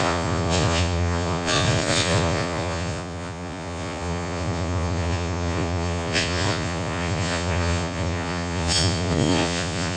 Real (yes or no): no